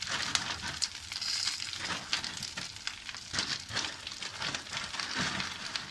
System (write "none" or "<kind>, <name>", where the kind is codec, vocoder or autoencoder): none